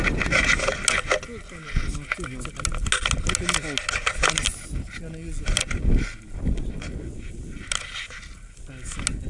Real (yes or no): yes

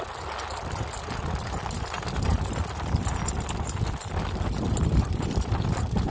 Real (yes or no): yes